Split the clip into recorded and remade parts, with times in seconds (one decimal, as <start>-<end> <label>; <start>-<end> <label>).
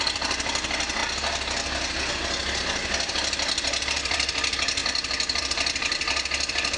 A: 0.0-1.0 remade; 1.0-2.6 recorded; 2.6-6.8 remade